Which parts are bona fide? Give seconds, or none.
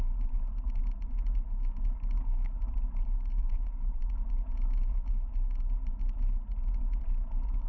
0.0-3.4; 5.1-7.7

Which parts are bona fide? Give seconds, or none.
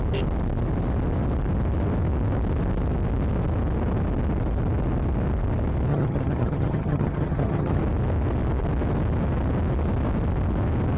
0.0-5.9; 7.8-11.0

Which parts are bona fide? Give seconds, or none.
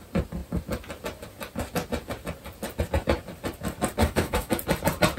0.0-4.0; 4.5-5.2